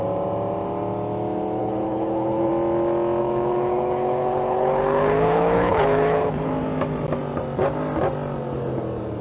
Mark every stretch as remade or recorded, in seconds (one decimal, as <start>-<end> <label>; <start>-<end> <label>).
0.0-1.6 recorded; 1.6-2.5 remade; 2.5-3.2 recorded; 3.2-6.5 remade; 6.5-9.2 recorded